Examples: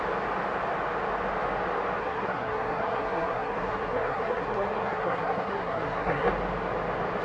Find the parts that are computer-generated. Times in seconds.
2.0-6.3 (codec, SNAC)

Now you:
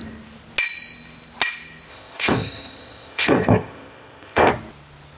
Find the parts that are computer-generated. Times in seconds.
1.9-4.5 (codec, ZipCodec)

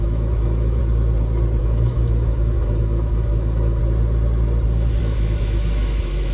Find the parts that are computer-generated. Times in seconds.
0.0-0.8 (autoencoder, DAC-VAE); 1.6-3.8; 5.0-6.3

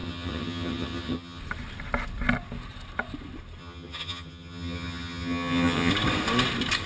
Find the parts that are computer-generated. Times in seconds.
0.0-1.4 (vocoder, HiFi-GAN); 3.6-5.9

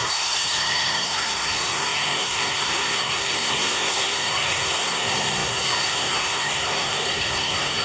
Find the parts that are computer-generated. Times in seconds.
0.0-7.8 (codec, SNAC)

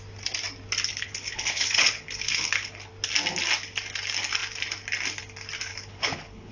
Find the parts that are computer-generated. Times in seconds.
0.9-2.9 (codec, HILCodec); 5.7-6.5